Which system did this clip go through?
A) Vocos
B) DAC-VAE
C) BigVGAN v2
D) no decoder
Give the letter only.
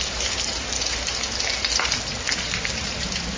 D